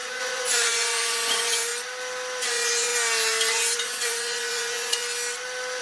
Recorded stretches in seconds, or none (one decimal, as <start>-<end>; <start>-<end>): 1.7-2.4; 2.9-3.5; 5.0-5.8

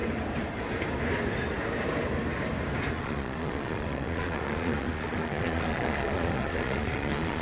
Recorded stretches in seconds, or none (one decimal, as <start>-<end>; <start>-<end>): 0.0-2.9

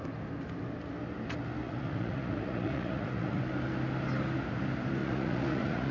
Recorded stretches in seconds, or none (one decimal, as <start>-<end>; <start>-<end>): 0.0-1.6; 3.4-5.0

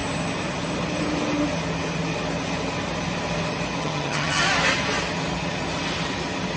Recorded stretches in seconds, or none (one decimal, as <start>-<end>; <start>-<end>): 0.0-3.8; 4.4-6.6

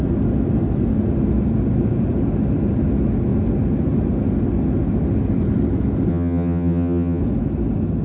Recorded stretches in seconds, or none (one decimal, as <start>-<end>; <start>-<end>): 0.0-6.1; 7.2-8.0

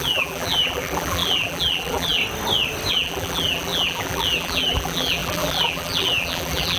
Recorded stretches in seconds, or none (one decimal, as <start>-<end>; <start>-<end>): 2.2-2.9